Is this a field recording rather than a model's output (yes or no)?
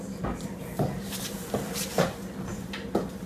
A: yes